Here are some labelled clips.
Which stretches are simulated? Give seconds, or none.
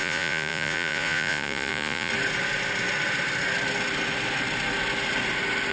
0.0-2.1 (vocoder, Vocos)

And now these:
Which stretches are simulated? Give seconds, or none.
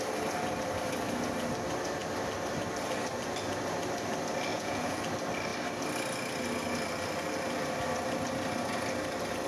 4.5-5.0 (vocoder, Vocos)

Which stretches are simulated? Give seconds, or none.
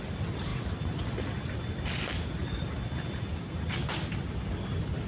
none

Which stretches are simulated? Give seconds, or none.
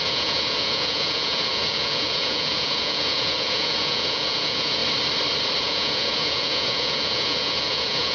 0.0-4.8 (vocoder, Vocos); 5.6-8.1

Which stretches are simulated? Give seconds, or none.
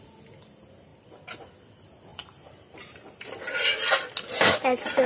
0.9-1.5 (vocoder, BigVGAN v2); 2.1-3.0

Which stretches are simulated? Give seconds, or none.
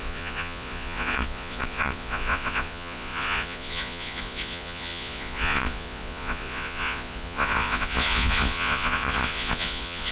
0.0-10.1 (vocoder, Vocos)